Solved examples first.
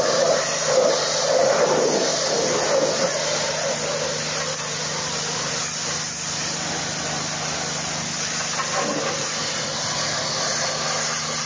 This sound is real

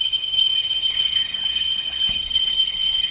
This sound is fake